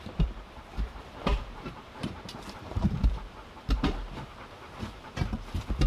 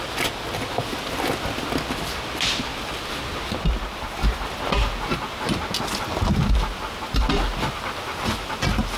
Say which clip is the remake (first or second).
first